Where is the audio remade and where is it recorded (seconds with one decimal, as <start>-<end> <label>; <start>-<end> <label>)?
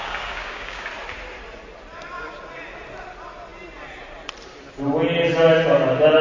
0.0-0.9 remade; 0.9-6.2 recorded